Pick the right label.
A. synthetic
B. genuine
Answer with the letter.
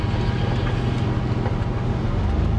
B